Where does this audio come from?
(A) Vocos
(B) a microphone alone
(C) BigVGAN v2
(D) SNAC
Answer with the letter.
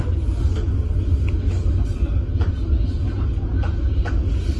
B